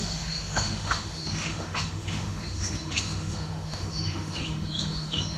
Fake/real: fake